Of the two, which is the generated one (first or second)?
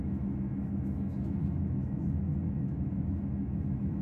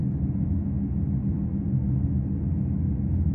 first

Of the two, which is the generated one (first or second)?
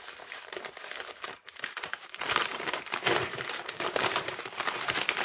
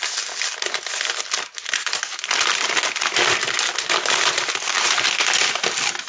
first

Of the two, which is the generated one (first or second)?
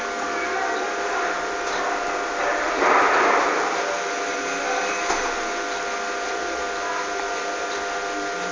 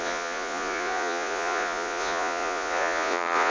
second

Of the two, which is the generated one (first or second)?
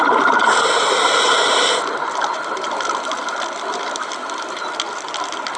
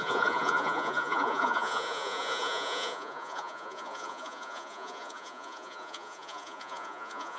second